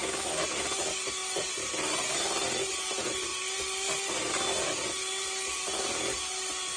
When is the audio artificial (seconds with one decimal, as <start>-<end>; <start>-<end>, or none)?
none